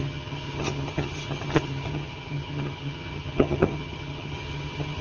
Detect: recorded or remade remade